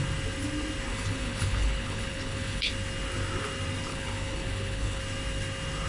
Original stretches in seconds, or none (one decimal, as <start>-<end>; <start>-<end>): 0.0-0.9; 2.7-3.9; 5.0-5.9